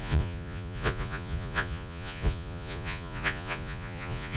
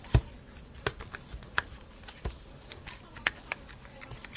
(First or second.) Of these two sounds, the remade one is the first